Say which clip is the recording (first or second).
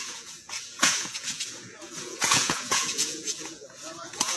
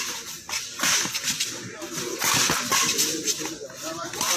second